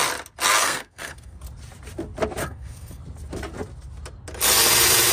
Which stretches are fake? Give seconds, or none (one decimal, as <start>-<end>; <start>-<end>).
0.6-1.4; 2.4-3.0